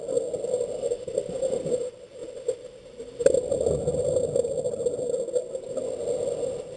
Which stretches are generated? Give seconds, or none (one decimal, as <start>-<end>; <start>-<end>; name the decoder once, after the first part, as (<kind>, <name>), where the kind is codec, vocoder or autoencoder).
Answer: none